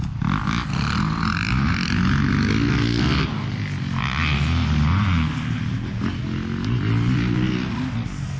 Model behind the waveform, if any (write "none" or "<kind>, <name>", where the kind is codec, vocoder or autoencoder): none